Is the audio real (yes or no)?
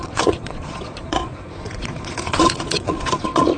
no